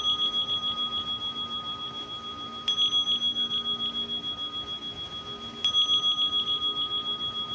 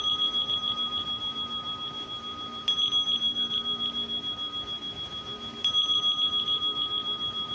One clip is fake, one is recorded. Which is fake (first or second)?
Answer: second